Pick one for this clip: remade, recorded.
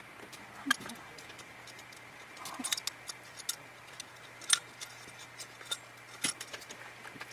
recorded